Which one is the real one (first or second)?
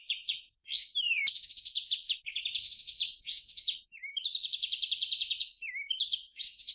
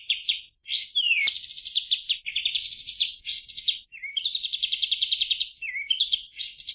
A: second